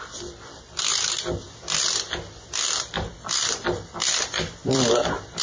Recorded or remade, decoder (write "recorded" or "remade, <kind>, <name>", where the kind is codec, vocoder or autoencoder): remade, vocoder, BigVGAN v2